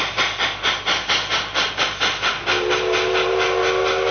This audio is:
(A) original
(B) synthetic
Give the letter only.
A